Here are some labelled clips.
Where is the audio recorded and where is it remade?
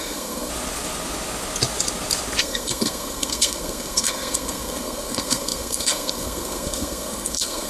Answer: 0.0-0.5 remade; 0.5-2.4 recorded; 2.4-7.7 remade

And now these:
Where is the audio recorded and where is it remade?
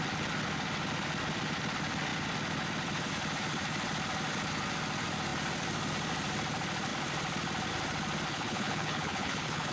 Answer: 0.0-8.3 recorded; 8.3-9.7 remade